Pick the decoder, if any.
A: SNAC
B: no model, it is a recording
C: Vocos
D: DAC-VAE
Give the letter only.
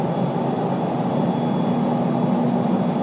B